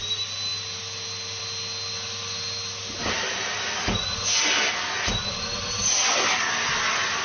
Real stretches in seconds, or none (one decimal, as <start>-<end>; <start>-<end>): 0.0-7.2